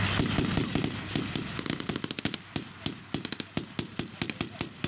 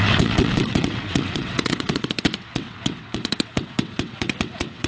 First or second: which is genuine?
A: first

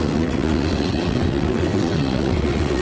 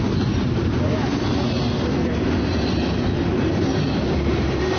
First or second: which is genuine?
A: second